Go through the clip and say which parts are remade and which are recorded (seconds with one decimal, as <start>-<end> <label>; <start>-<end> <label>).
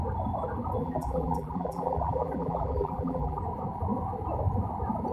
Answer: 0.0-0.8 recorded; 0.8-3.4 remade; 3.4-5.1 recorded